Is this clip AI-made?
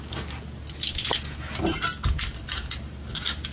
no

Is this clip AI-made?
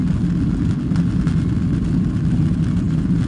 no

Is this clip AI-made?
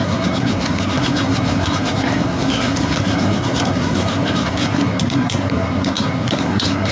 yes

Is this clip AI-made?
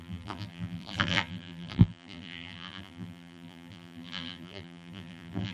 yes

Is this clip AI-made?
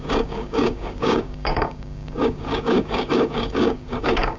yes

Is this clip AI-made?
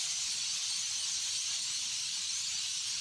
no